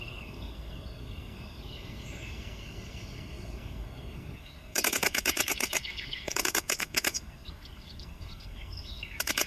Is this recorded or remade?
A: remade